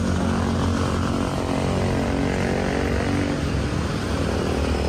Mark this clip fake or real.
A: real